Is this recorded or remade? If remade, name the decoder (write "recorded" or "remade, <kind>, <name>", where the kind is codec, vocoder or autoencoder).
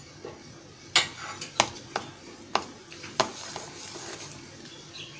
recorded